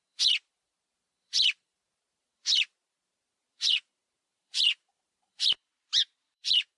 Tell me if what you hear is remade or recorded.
remade